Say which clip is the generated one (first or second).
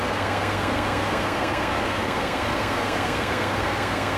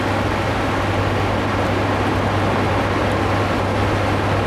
first